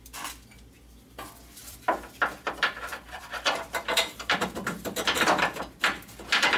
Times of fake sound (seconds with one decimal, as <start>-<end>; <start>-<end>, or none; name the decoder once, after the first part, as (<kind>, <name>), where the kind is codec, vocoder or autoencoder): 1.6-5.6 (vocoder, BigVGAN v2)